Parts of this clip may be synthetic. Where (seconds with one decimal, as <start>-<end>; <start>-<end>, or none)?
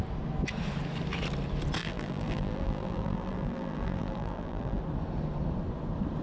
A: 1.8-4.8